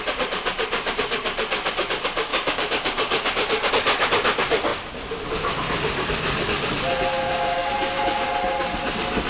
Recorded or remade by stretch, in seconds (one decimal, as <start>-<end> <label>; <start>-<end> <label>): 0.0-2.3 recorded; 2.3-3.7 remade; 3.7-7.1 recorded; 7.1-7.7 remade; 7.7-9.3 recorded